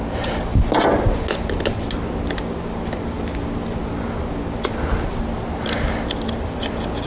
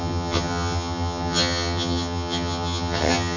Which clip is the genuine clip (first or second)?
first